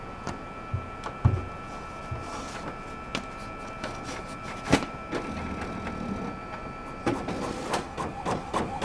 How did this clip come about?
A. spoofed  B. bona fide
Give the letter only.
B